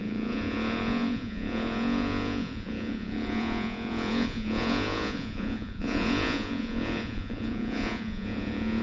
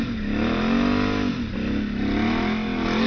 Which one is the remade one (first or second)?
first